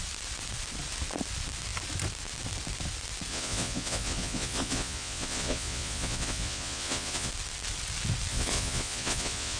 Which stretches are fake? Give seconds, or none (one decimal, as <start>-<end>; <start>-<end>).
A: 3.3-7.3; 8.3-9.6